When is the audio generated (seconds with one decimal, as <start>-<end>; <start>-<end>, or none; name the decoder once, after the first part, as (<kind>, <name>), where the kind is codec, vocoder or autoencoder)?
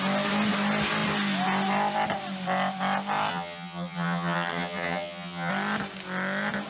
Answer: 3.3-5.5 (vocoder, HiFi-GAN)